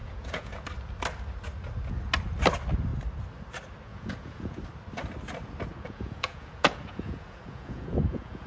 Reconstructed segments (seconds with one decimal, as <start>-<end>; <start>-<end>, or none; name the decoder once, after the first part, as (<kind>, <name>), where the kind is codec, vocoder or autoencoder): 0.0-0.6 (vocoder, Vocos); 3.9-4.6; 5.7-8.5